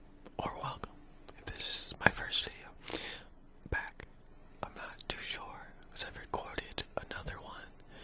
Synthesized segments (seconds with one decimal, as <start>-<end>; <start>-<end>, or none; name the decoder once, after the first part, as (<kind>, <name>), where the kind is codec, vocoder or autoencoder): none